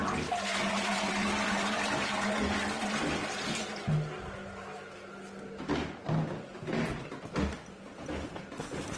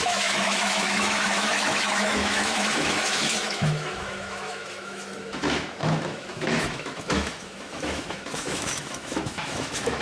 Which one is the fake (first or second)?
second